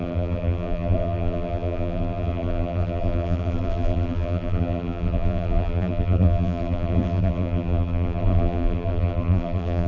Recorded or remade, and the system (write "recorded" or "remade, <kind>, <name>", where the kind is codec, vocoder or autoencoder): remade, vocoder, BigVGAN v2